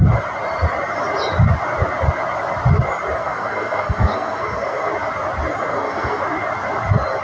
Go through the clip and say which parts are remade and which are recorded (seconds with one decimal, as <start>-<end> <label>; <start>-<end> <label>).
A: 0.0-3.2 recorded; 3.2-4.9 remade; 4.9-5.7 recorded; 5.7-6.2 remade; 6.2-7.2 recorded